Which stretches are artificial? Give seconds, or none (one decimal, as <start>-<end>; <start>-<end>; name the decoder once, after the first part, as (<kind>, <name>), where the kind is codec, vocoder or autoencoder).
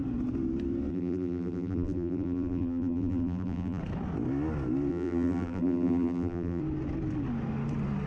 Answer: 0.9-3.8 (vocoder, BigVGAN v2); 4.9-6.6